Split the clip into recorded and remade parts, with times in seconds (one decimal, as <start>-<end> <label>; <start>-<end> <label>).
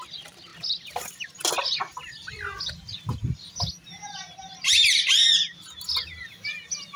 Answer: 0.0-7.0 recorded